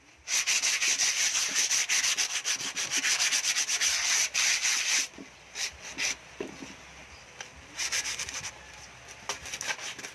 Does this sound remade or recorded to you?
remade